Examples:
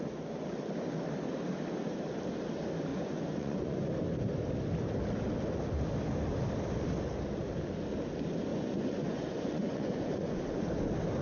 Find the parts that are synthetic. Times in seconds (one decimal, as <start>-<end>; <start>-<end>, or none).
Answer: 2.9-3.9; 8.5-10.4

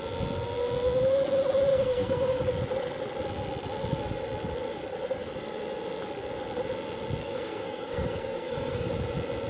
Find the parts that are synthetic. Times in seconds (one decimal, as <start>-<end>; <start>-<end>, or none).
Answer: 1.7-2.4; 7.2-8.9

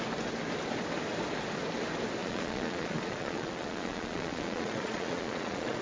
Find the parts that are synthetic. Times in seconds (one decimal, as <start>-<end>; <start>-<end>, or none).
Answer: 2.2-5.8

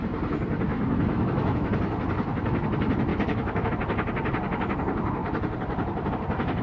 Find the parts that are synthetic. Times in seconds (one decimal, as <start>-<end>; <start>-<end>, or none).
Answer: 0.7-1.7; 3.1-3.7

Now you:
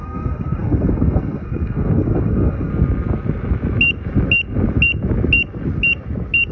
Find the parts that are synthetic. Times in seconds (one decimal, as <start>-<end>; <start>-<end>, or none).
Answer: 0.0-2.7

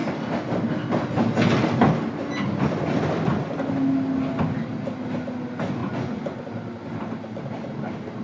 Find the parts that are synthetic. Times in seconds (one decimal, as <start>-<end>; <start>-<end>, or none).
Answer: 5.8-6.4

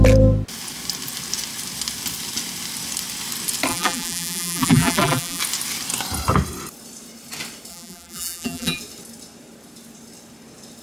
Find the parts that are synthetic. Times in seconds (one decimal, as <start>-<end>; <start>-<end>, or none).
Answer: 3.7-5.4; 7.7-8.8

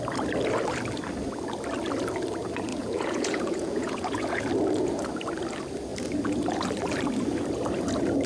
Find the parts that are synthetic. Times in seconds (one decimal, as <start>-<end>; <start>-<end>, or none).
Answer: 2.7-4.5